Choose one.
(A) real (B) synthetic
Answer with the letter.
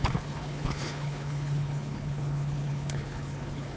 B